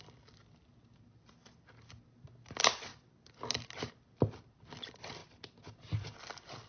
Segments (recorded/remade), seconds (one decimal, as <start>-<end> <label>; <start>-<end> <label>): 0.0-6.7 recorded

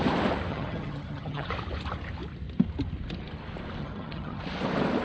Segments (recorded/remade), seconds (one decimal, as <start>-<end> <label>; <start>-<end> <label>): 0.0-0.5 recorded; 0.5-1.5 remade; 1.5-3.8 recorded; 3.8-4.4 remade; 4.4-5.0 recorded